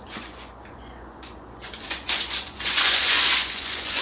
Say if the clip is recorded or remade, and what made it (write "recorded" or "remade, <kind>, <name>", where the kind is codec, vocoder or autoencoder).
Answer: remade, vocoder, Vocos